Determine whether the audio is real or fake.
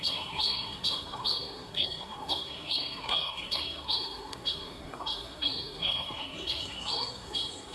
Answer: fake